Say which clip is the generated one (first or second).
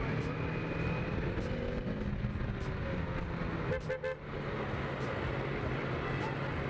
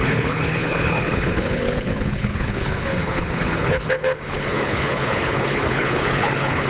second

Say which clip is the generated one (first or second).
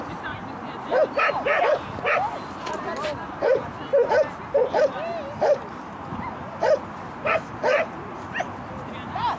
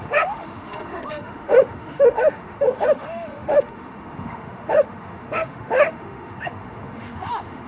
second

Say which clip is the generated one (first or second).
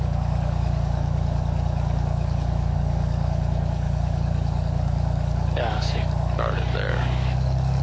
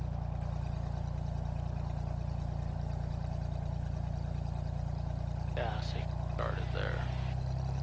first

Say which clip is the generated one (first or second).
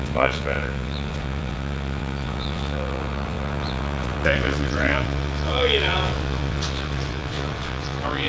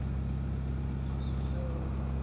first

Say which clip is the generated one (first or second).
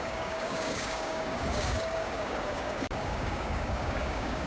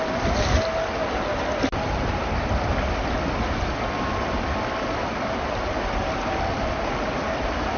first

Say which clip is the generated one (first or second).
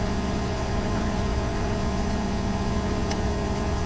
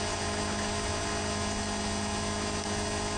first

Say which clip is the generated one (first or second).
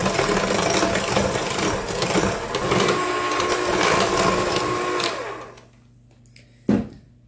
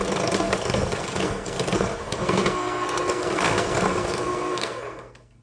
second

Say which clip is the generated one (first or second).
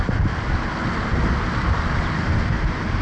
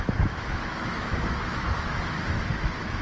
second